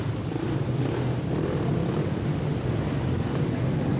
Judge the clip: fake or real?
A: real